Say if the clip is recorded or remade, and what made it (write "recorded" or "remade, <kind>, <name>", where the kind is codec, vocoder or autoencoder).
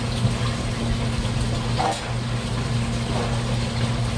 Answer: recorded